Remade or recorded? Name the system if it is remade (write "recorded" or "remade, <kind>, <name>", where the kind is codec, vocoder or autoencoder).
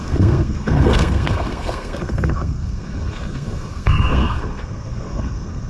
remade, codec, SNAC